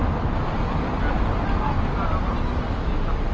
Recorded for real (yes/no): yes